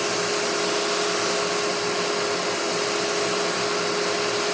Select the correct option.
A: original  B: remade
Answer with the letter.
A